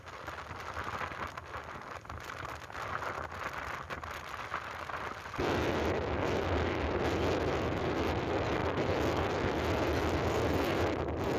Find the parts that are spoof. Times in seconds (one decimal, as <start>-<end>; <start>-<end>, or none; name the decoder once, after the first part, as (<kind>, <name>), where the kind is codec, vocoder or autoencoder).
none